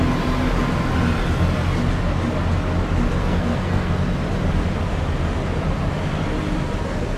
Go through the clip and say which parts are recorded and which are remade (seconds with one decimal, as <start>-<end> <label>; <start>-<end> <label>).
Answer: 0.0-3.2 recorded; 3.2-3.9 remade; 3.9-7.2 recorded